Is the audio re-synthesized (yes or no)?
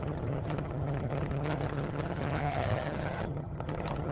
yes